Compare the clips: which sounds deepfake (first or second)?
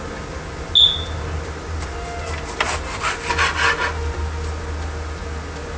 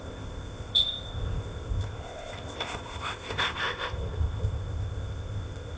second